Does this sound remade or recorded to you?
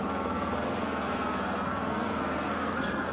remade